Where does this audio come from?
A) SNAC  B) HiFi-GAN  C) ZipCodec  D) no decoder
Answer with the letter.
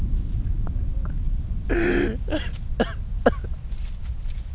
D